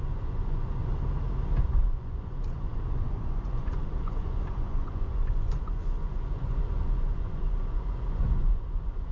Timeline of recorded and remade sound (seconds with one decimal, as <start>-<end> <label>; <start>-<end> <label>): 0.0-0.8 remade; 0.8-1.6 recorded; 1.6-9.1 remade